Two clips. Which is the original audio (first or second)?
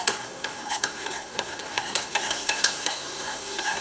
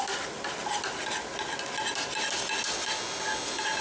second